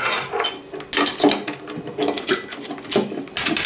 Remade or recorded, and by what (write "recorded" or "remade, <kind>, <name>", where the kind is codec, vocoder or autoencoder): recorded